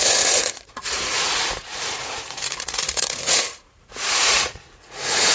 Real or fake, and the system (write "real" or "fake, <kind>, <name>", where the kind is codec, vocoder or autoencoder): fake, vocoder, Vocos